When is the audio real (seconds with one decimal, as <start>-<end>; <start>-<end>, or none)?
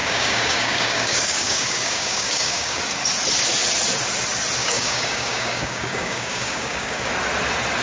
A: 2.8-4.6; 7.1-7.8